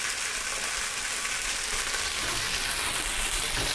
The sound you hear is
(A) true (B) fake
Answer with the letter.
A